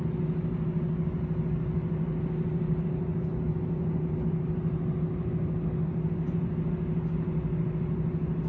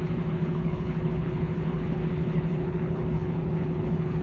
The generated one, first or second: second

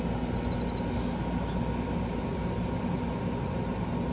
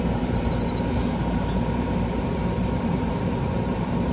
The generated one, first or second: second